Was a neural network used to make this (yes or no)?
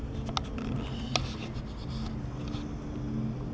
no